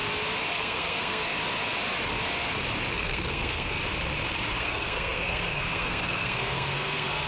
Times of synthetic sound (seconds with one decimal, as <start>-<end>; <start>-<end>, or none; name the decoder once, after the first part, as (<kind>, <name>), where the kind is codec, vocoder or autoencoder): 0.5-1.3 (codec, SNAC); 2.9-3.8; 4.6-7.3